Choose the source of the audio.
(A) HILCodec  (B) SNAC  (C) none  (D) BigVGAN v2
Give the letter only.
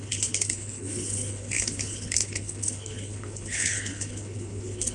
A